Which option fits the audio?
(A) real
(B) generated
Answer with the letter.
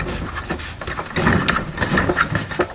A